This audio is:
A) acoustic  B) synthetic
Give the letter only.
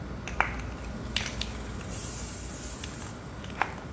A